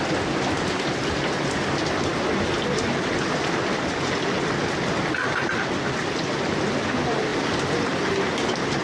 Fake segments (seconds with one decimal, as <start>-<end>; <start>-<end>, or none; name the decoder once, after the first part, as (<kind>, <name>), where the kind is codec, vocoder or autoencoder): none